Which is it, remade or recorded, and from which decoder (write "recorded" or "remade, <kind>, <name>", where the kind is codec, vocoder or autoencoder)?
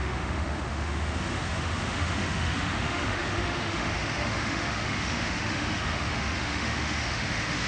remade, autoencoder, DAC-VAE